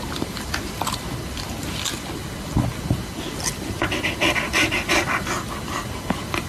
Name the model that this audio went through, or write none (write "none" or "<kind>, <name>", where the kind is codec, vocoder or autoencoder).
none